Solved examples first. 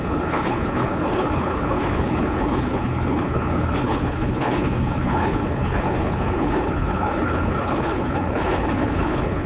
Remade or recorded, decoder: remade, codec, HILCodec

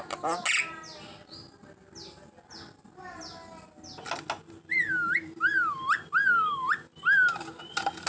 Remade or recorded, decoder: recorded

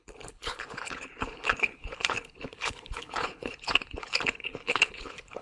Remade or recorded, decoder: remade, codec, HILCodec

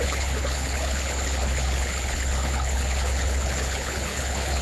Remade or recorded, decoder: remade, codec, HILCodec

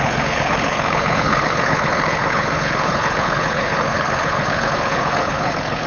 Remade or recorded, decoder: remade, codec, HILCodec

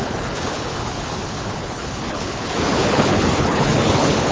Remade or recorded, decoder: remade, codec, HILCodec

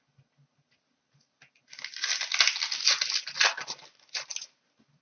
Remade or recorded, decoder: recorded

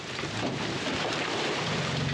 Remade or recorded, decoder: recorded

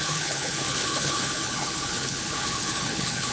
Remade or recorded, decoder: remade, codec, HILCodec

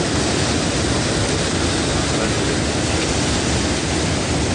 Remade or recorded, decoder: recorded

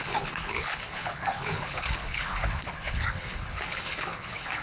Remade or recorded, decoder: remade, codec, HILCodec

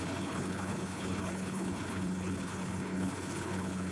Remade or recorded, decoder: remade, codec, HILCodec